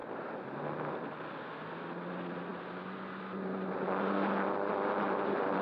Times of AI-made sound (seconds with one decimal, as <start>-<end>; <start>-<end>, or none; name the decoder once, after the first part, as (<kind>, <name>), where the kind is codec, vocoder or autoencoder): 0.0-2.5 (vocoder, BigVGAN v2); 4.7-5.6